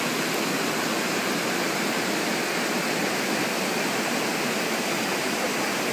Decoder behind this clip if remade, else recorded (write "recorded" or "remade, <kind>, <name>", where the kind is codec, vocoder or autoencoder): recorded